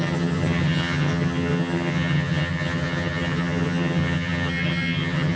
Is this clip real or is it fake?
fake